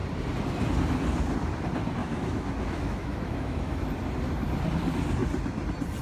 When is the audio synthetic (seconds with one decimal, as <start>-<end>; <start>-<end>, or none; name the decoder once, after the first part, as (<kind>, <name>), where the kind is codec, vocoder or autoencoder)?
2.0-3.9 (autoencoder, DAC-VAE)